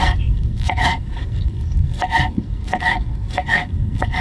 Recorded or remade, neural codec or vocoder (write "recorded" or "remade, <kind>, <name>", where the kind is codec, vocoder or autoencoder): remade, codec, SNAC